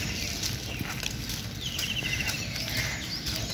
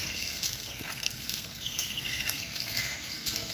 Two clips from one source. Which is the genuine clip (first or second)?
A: first